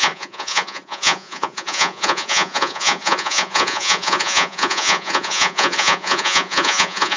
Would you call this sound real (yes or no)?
no